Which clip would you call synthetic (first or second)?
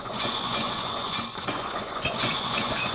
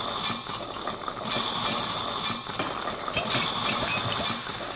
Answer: first